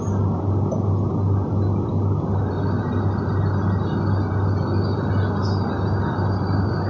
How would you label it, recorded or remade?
recorded